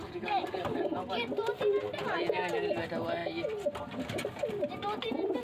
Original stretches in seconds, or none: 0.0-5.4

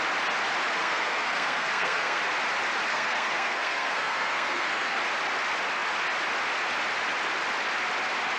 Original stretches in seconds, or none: 0.0-0.8; 2.2-2.9; 5.0-8.4

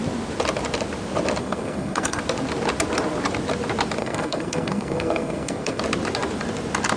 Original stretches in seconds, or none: 0.0-1.4; 2.2-4.0; 5.8-7.0

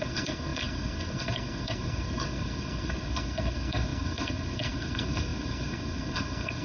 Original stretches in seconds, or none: none